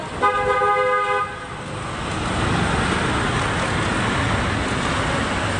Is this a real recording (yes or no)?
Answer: yes